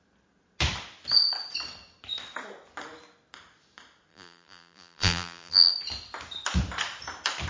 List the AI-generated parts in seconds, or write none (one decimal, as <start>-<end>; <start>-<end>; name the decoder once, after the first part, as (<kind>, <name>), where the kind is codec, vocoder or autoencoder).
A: 4.1-5.7 (vocoder, BigVGAN v2)